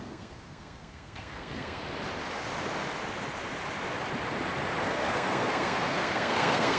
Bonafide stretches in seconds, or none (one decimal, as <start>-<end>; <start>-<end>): 1.8-4.8